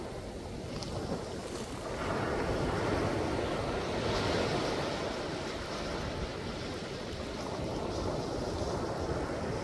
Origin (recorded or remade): recorded